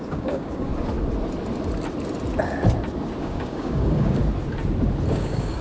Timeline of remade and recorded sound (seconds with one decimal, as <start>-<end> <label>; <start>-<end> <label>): 0.0-0.7 remade; 0.7-3.2 recorded; 3.2-4.2 remade; 4.2-5.1 recorded; 5.1-5.6 remade